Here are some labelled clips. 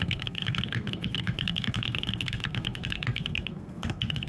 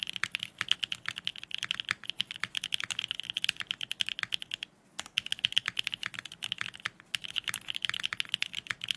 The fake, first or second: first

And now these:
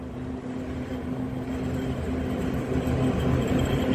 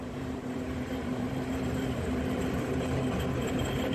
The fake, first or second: second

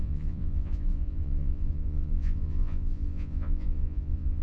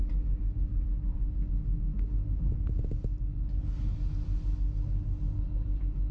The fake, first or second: first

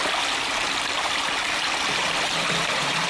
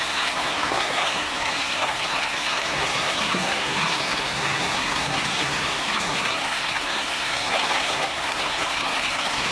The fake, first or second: second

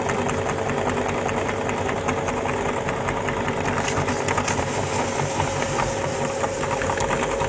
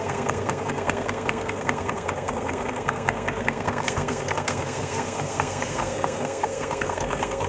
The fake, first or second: second